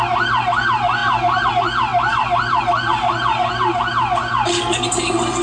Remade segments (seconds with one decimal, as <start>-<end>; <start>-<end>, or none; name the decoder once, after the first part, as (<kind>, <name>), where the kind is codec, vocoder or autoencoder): none